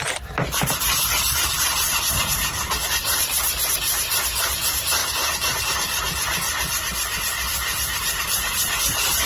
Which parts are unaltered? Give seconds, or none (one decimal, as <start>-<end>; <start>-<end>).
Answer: none